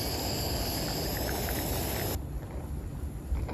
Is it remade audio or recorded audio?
recorded